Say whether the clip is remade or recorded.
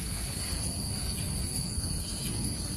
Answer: remade